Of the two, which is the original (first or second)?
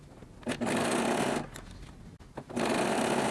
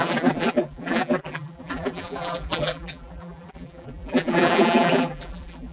first